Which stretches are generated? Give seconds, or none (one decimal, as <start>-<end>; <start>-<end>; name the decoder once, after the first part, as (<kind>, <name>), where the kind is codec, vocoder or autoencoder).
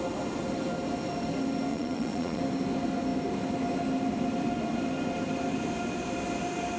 1.7-2.4 (vocoder, Vocos)